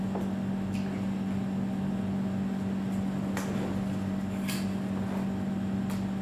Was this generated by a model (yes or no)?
no